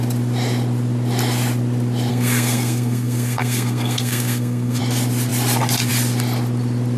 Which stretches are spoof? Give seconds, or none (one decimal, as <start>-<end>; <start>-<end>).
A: 2.1-4.8